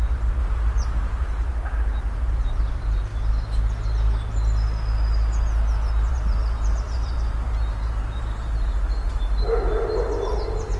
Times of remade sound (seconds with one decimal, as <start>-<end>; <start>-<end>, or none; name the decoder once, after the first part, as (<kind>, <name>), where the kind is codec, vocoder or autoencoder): 0.0-3.1 (vocoder, BigVGAN v2); 6.1-10.8